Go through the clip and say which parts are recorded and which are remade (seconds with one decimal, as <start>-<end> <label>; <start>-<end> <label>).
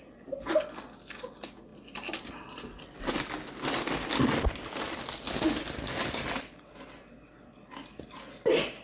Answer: 0.0-8.8 recorded